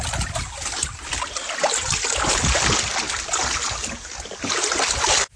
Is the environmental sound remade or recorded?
recorded